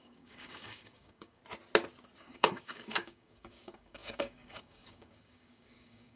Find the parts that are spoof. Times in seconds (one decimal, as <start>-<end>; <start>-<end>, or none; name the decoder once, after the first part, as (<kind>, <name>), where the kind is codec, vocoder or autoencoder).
0.0-1.4 (codec, DAC); 2.2-6.2